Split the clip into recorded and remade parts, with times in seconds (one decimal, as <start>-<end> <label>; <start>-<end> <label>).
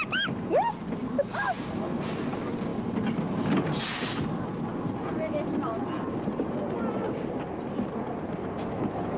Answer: 0.0-9.2 recorded